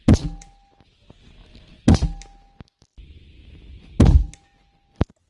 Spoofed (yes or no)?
no